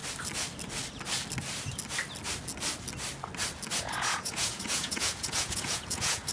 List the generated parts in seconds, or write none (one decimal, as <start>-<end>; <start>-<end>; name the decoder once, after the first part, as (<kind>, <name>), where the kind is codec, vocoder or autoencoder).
3.8-6.3 (vocoder, Vocos)